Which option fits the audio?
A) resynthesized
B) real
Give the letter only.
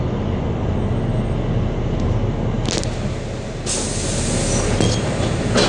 B